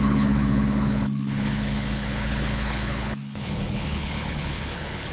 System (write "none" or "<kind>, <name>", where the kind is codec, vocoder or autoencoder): codec, HILCodec